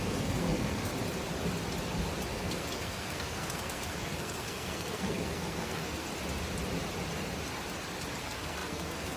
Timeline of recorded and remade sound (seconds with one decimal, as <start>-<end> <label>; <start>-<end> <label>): 0.0-0.9 remade; 0.9-2.3 recorded; 2.3-6.1 remade; 6.1-8.2 recorded; 8.2-9.2 remade